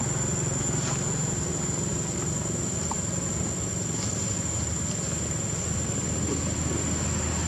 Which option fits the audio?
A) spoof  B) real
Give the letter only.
B